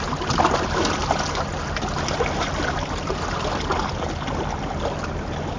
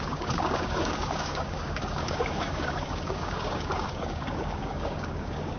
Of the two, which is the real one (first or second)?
first